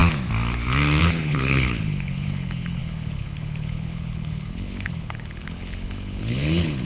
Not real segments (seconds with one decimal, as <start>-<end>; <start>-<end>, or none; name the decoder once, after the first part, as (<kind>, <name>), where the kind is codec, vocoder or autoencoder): 1.0-6.8 (codec, HILCodec)